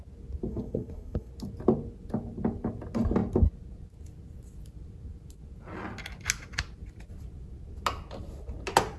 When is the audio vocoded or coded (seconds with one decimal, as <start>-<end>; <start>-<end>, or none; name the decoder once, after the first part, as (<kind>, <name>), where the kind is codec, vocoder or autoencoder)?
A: 0.5-1.3 (codec, SNAC)